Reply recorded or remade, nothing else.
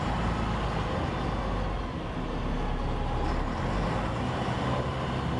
recorded